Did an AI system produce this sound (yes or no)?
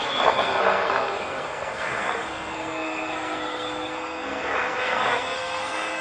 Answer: yes